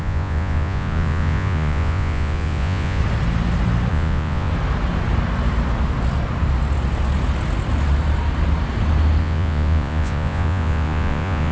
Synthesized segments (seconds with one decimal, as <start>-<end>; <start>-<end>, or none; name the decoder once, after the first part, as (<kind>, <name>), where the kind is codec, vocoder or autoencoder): 0.0-3.0 (vocoder, Vocos); 3.9-4.5; 9.2-11.5